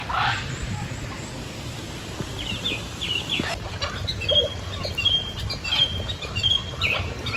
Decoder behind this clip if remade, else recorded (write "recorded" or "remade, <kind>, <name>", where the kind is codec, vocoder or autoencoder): recorded